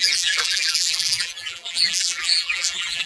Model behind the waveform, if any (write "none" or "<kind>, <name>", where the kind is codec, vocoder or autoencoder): vocoder, BigVGAN v2